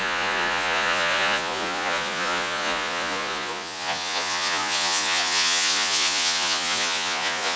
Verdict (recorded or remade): remade